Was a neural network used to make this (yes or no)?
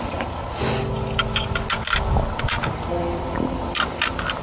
no